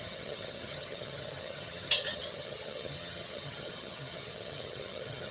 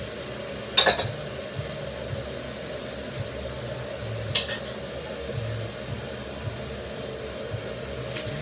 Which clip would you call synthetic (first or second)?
first